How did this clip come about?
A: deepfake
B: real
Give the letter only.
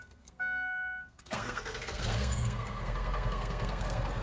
A